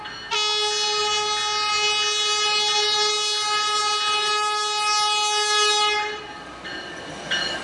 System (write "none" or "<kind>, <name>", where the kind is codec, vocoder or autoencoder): none